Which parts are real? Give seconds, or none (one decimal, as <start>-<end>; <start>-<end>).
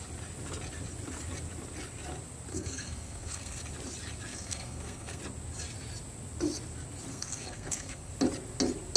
0.0-2.5; 3.6-4.3; 5.2-7.1; 8.1-9.0